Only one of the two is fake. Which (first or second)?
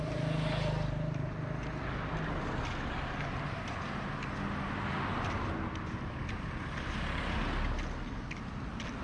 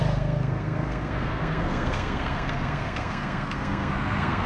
second